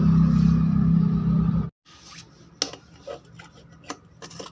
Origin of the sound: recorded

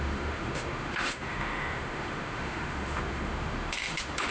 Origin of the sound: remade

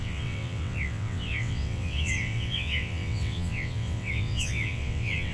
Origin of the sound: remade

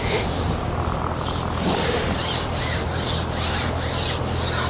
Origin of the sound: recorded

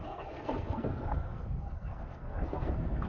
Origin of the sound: remade